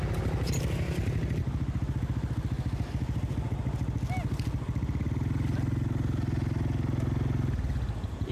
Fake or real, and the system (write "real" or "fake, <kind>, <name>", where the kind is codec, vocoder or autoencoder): real